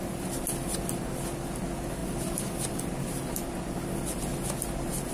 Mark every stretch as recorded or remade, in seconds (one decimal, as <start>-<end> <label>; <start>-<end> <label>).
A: 0.0-5.1 recorded